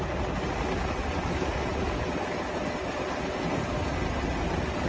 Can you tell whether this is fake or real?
real